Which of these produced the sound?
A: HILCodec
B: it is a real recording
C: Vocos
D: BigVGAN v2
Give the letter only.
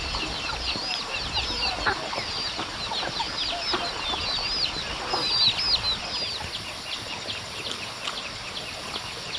B